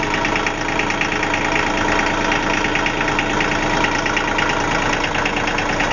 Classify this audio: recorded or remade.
recorded